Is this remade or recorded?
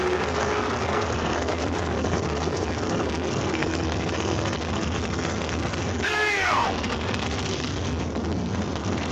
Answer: remade